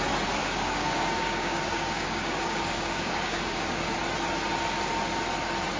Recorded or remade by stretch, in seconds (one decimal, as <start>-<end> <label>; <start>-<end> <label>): 0.0-0.4 recorded; 0.4-3.9 remade; 3.9-5.8 recorded